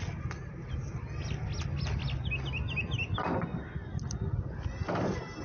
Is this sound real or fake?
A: real